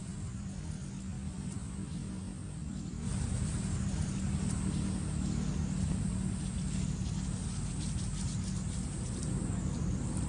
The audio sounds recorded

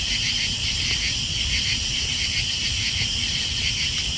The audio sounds recorded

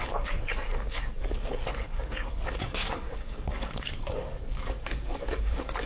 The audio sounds remade